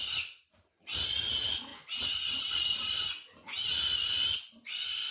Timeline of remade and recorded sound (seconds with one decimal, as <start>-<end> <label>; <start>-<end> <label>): 0.0-5.1 recorded